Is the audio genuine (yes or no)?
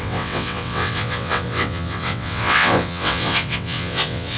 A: no